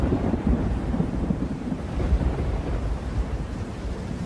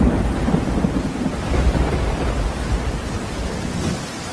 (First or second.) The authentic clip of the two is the second